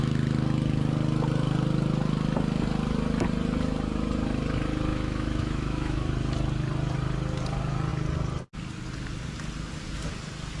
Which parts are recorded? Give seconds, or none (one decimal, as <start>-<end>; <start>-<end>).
0.0-4.9; 6.1-10.6